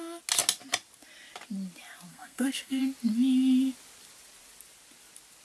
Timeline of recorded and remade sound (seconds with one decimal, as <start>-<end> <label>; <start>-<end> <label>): 0.0-2.1 recorded; 2.1-2.8 remade; 2.8-5.4 recorded